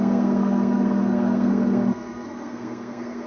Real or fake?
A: fake